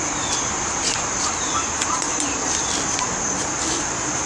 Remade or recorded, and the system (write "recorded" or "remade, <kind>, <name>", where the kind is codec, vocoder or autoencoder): recorded